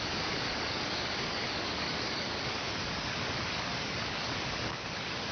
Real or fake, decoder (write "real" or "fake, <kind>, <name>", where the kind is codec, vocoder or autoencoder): fake, codec, DAC